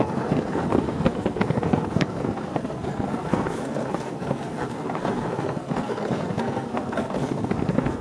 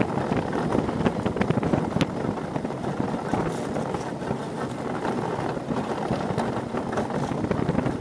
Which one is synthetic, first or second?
first